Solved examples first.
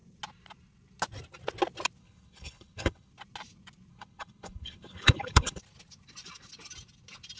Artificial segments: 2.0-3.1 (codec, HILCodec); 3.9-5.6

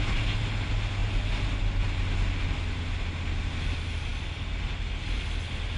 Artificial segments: none